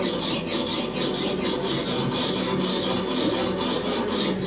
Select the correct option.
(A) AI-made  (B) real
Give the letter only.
B